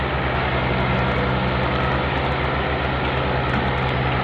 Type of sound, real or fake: real